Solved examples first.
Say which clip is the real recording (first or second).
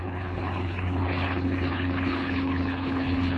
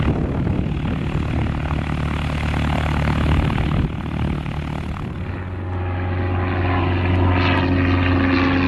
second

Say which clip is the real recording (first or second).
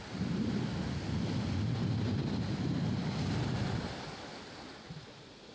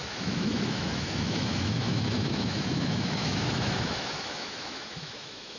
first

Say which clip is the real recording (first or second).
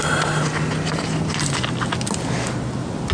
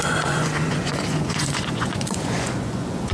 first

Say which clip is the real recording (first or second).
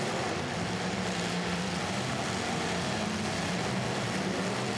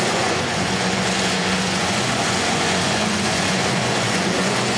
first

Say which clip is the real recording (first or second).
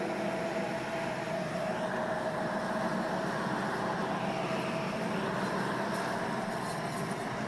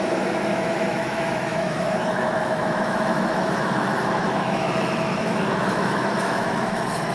first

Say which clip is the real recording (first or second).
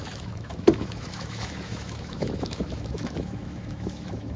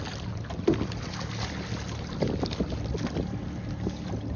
second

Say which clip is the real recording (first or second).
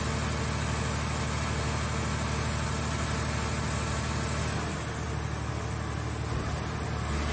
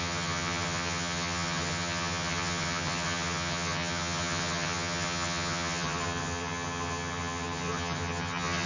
first